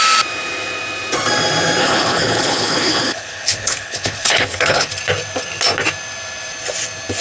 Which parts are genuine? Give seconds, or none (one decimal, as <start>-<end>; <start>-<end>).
0.0-1.8; 4.9-7.2